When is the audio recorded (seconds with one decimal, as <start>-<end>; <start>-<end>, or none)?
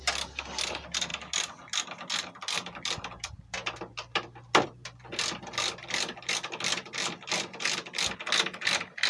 0.0-9.1